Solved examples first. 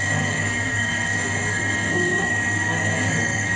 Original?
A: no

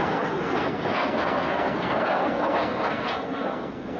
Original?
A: no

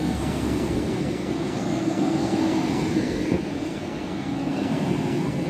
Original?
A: no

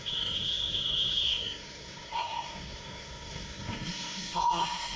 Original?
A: no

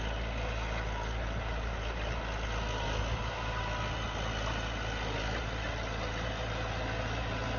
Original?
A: yes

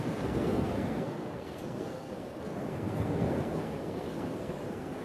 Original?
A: no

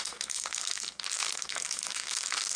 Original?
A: no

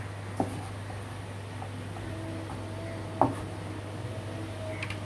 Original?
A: yes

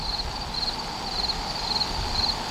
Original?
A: yes